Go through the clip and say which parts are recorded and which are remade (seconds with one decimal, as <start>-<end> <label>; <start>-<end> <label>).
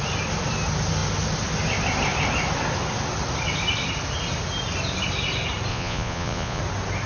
0.0-5.7 recorded; 5.7-6.6 remade; 6.6-7.1 recorded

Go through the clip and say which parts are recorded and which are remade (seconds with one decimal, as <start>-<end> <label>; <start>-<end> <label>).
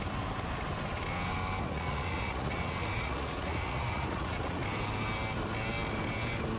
0.0-1.6 recorded; 1.6-4.6 remade; 4.6-6.6 recorded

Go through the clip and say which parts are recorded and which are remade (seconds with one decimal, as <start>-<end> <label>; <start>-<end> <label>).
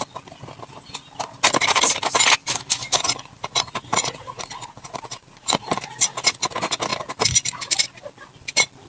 0.0-2.8 recorded; 2.8-5.8 remade; 5.8-8.9 recorded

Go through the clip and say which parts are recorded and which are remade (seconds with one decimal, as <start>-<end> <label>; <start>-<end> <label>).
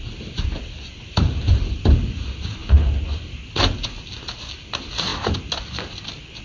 0.0-6.4 recorded